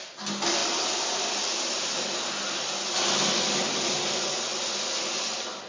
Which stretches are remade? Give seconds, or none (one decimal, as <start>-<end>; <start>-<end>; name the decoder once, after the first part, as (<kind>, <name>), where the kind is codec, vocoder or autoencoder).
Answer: none